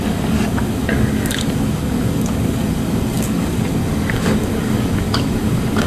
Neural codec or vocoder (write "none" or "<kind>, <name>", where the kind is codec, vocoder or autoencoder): codec, DAC